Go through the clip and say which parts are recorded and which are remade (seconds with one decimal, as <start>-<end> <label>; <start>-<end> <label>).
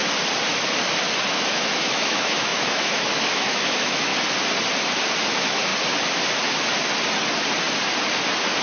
0.0-1.3 recorded; 1.3-4.1 remade; 4.1-5.3 recorded; 5.3-5.7 remade; 5.7-8.6 recorded